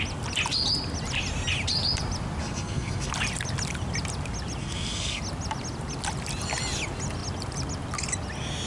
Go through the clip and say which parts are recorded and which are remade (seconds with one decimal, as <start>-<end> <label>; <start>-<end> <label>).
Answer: 0.0-2.4 recorded; 2.4-3.1 remade; 3.1-4.6 recorded; 4.6-5.2 remade; 5.2-8.7 recorded

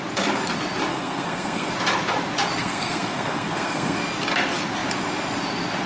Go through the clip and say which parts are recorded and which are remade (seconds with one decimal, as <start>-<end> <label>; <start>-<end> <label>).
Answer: 0.0-0.9 recorded; 0.9-1.7 remade; 1.7-2.6 recorded; 2.6-4.0 remade; 4.0-5.9 recorded